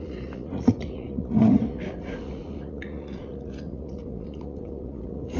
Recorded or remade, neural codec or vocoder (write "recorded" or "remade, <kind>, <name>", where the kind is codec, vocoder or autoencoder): remade, vocoder, Vocos